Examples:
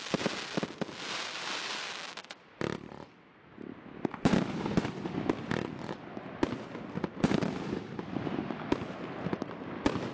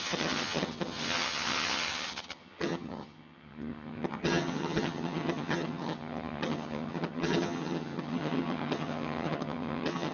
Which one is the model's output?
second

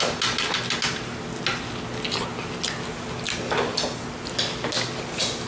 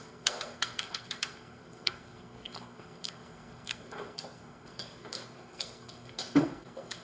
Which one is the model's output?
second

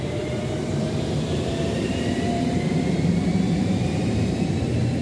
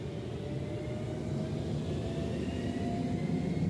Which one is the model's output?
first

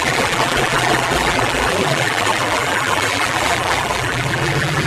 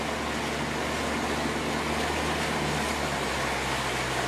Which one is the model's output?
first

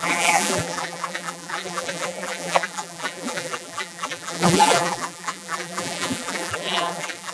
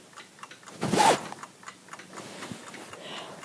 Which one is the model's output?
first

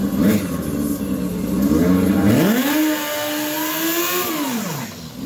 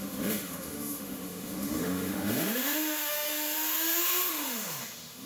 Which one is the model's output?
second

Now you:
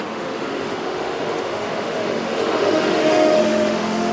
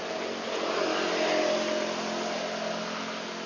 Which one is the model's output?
first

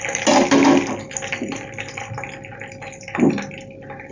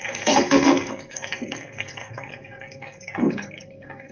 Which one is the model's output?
second